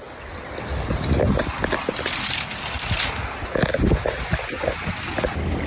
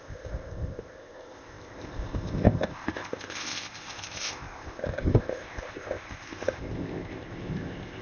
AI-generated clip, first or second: second